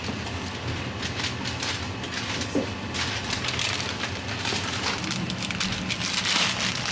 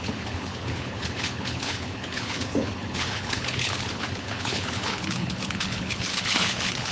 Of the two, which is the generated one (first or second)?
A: second